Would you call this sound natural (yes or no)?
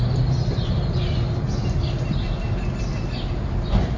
yes